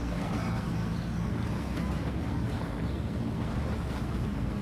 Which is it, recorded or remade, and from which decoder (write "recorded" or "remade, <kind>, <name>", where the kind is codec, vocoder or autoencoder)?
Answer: remade, codec, SNAC